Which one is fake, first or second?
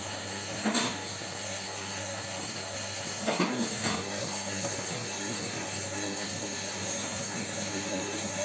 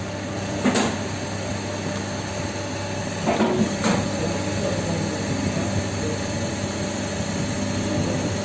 first